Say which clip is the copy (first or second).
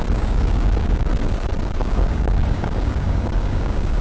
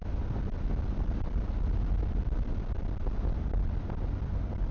first